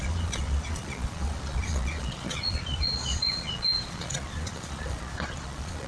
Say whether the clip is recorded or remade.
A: remade